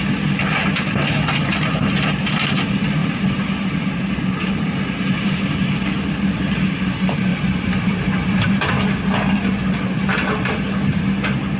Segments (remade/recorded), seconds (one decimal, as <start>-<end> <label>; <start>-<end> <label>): 0.0-3.0 recorded; 3.0-5.5 remade; 5.5-7.3 recorded; 7.3-8.8 remade; 8.8-11.6 recorded